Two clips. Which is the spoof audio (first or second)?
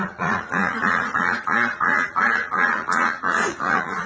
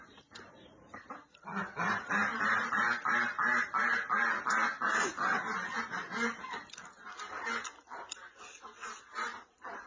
first